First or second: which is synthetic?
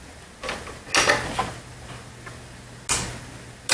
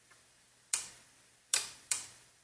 second